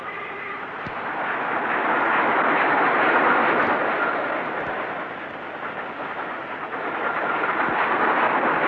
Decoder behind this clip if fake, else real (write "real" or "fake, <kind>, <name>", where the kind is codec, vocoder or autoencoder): real